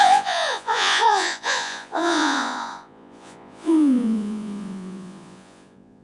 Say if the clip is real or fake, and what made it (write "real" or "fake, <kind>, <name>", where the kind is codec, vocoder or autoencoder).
fake, vocoder, Vocos